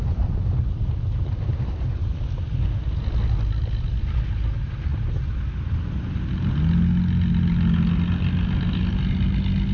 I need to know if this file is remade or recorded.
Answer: recorded